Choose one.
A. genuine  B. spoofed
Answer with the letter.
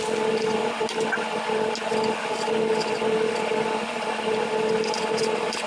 A